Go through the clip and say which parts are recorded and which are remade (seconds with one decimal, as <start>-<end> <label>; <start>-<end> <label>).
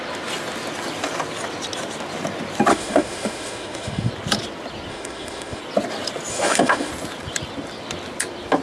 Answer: 0.0-2.7 recorded; 2.7-4.1 remade; 4.1-4.9 recorded; 4.9-5.6 remade; 5.6-6.3 recorded; 6.3-6.9 remade; 6.9-8.6 recorded